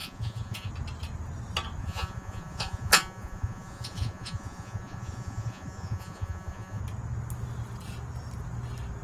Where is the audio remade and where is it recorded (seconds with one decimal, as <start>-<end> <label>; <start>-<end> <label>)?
0.0-0.7 remade; 0.7-1.8 recorded; 1.8-6.8 remade; 6.8-9.0 recorded